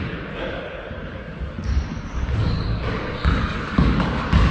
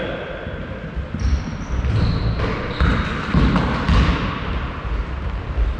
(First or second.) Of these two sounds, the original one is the second